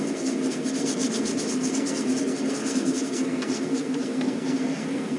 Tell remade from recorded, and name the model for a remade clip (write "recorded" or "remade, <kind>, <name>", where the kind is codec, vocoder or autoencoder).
remade, codec, SNAC